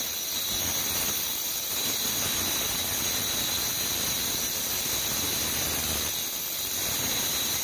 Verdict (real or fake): real